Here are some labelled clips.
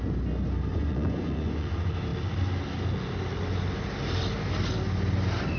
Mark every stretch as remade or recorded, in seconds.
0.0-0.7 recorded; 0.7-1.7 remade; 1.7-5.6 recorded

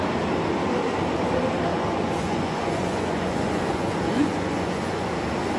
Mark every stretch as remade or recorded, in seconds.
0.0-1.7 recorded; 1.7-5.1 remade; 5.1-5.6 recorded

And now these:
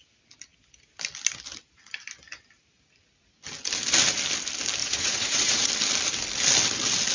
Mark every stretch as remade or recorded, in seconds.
0.0-4.8 recorded; 4.8-5.7 remade; 5.7-7.1 recorded

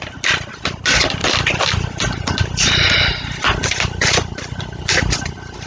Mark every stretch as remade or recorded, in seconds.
0.0-5.7 recorded

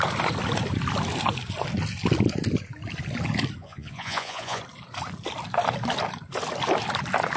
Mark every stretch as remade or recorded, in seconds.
0.0-3.6 recorded; 3.6-4.6 remade; 4.6-7.4 recorded